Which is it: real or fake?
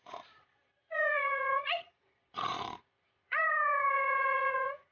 fake